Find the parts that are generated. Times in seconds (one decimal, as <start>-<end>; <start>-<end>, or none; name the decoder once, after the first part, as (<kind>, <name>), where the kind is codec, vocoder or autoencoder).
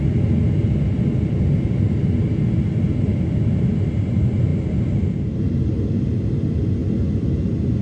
none